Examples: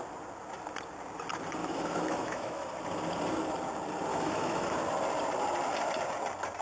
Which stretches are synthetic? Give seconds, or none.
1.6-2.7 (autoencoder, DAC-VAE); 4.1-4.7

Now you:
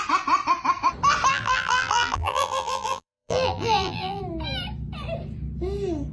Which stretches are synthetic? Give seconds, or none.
1.3-4.2 (vocoder, BigVGAN v2)

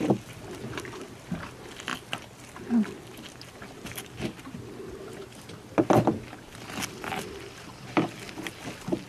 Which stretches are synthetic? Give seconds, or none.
none

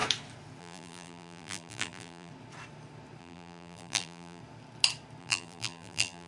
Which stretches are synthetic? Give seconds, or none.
0.6-2.3 (vocoder, BigVGAN v2); 3.2-4.4; 5.2-6.3